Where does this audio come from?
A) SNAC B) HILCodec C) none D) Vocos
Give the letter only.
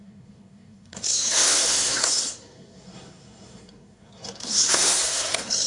A